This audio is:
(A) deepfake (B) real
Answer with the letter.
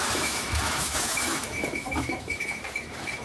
A